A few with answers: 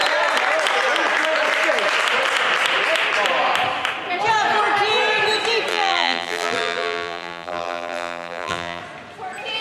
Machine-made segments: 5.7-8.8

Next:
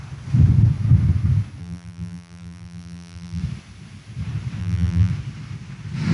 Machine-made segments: 1.6-3.4; 4.6-5.1

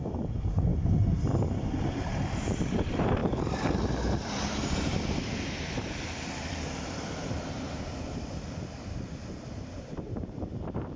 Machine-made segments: 0.0-0.7; 1.3-3.2; 4.7-11.0

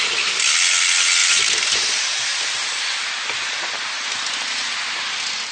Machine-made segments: none

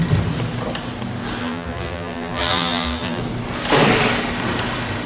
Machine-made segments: 1.4-3.2

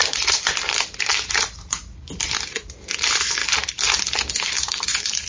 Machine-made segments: 0.0-3.4; 4.3-5.3